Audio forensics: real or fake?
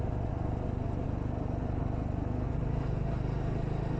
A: real